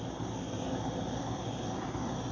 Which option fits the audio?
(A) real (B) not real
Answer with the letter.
A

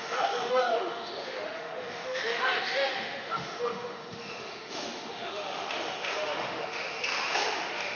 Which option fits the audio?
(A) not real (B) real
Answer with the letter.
A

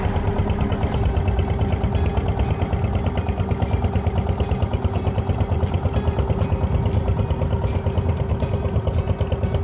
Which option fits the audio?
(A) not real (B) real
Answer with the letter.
B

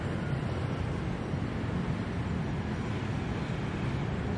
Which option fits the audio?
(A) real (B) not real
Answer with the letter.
A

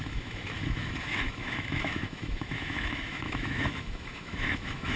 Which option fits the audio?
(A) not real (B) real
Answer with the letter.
A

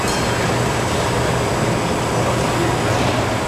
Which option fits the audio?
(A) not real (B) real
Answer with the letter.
B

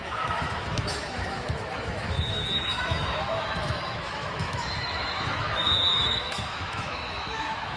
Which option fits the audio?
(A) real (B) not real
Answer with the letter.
B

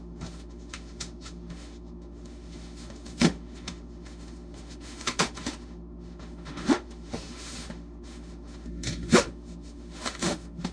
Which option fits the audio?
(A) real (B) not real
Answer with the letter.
B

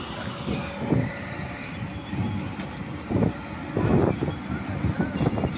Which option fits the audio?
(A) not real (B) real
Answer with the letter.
B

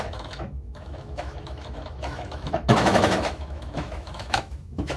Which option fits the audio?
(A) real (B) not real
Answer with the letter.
B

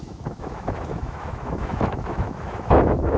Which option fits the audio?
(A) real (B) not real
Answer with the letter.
B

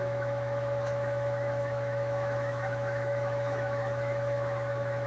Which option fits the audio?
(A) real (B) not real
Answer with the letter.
B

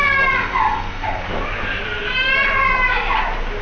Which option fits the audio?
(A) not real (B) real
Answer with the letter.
B